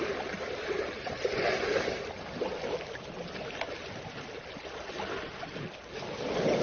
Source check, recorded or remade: recorded